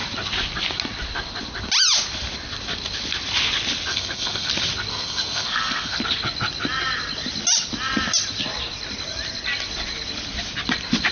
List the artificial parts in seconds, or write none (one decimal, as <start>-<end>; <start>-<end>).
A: 3.9-4.5; 4.9-6.0